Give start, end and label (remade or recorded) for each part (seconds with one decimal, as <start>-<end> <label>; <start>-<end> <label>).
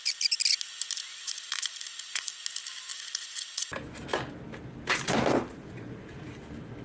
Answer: 0.0-1.1 recorded; 1.1-2.4 remade; 2.4-2.9 recorded; 2.9-3.7 remade; 3.7-5.5 recorded; 5.5-6.3 remade; 6.3-6.8 recorded